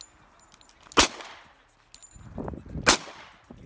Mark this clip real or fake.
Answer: real